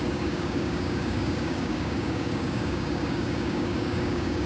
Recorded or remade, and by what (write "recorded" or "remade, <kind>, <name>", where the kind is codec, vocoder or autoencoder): remade, codec, DAC